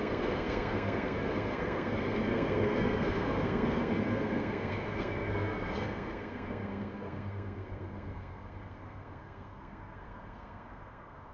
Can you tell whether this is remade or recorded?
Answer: remade